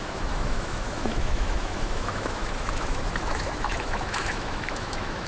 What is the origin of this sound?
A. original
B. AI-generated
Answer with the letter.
B